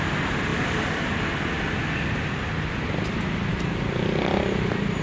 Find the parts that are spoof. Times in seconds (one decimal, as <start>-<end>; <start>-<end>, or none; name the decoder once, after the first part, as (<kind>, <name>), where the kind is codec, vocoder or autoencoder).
none